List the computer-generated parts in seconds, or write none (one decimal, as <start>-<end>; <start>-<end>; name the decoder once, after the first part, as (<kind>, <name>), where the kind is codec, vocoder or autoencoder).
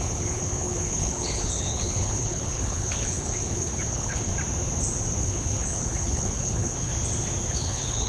0.0-4.3 (codec, HILCodec); 5.2-6.9; 7.5-8.1